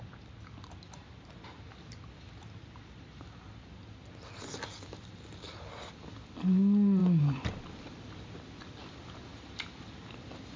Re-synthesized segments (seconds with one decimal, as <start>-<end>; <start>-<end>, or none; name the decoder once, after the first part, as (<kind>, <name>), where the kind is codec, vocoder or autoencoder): none